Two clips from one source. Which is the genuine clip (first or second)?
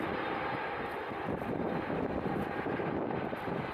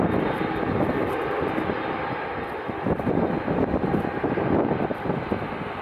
second